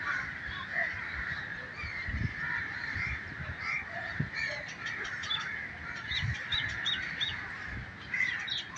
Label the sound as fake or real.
fake